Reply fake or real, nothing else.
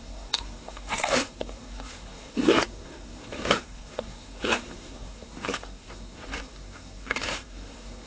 fake